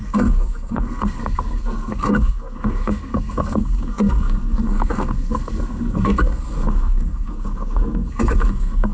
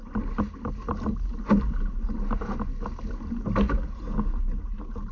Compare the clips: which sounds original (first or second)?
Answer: second